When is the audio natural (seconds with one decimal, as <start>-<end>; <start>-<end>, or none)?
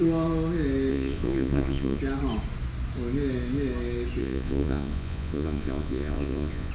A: 0.0-0.9; 2.0-4.2